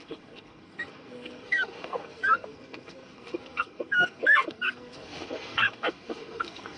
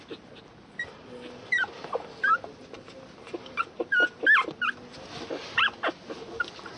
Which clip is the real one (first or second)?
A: second